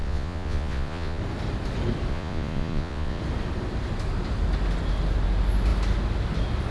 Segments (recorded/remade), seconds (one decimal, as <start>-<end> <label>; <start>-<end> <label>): 0.0-1.2 remade; 1.2-2.1 recorded; 2.1-3.2 remade; 3.2-6.7 recorded